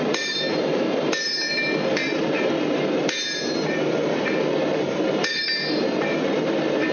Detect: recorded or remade remade